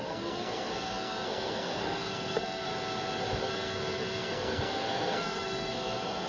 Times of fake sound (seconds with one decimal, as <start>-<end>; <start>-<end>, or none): 0.0-2.7; 3.4-6.3